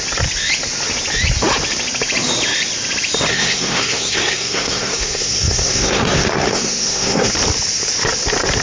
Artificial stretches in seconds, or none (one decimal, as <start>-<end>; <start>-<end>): 3.3-7.3